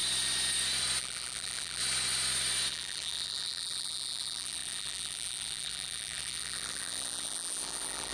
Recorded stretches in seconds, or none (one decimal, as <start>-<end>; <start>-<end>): 0.0-1.0; 1.8-2.7